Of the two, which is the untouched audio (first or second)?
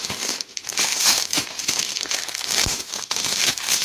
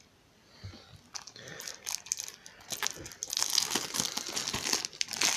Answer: second